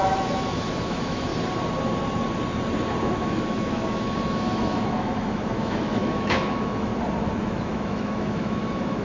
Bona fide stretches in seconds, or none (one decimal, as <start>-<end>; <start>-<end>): 1.3-3.0; 6.9-7.4